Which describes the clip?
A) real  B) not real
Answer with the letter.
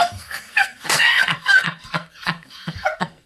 B